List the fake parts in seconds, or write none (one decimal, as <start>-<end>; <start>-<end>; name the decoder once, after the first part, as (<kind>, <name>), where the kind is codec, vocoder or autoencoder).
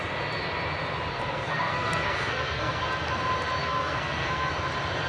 1.1-2.8 (codec, SNAC); 3.6-4.5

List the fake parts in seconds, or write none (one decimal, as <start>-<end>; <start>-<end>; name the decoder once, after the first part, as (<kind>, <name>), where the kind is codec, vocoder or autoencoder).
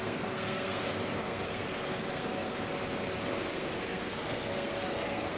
0.0-2.7 (codec, SNAC); 3.5-5.4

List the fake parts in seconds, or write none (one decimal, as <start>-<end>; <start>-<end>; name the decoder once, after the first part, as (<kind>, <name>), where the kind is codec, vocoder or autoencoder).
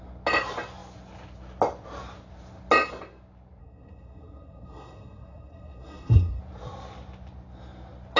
3.6-6.4 (codec, SNAC)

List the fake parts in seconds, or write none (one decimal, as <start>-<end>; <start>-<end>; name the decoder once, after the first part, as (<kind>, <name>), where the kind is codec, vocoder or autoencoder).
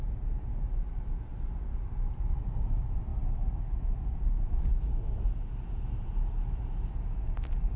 none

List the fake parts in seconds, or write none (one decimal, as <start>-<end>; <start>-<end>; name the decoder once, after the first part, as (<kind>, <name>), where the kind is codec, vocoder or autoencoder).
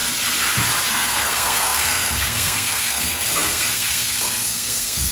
0.9-5.1 (codec, SNAC)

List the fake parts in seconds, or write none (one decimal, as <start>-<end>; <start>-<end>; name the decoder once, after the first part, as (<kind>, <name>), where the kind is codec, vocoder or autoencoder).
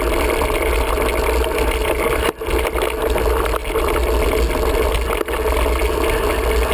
none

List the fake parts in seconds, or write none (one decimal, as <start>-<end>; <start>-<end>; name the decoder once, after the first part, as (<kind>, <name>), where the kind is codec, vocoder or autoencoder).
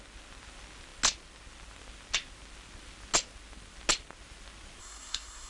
4.8-5.5 (codec, SNAC)